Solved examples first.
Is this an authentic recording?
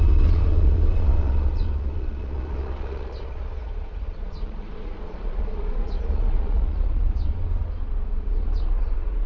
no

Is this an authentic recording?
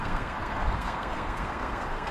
no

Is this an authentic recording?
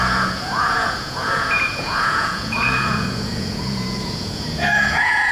no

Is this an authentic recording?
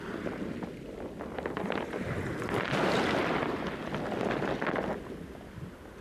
yes